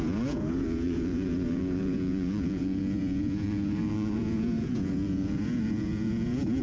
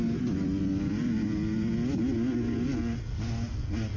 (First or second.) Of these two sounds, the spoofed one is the first